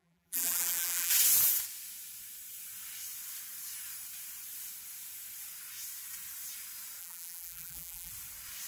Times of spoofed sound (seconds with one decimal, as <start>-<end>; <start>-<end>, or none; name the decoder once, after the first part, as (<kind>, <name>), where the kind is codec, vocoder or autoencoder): 0.0-1.1 (vocoder, BigVGAN v2); 7.0-8.1